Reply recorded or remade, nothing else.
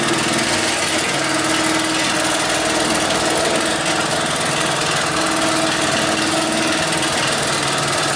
recorded